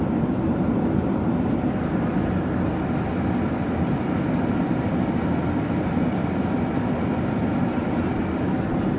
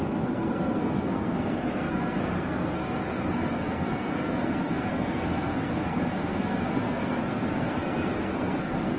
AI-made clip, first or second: second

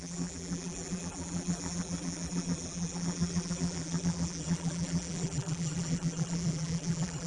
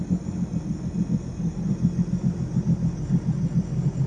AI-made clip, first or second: first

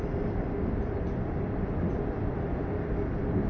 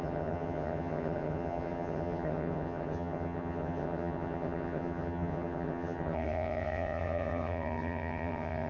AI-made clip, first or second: second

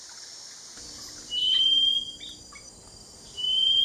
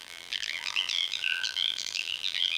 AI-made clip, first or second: second